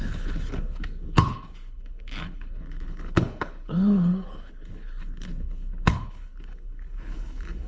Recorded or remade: remade